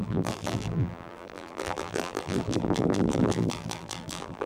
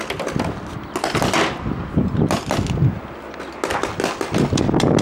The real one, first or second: second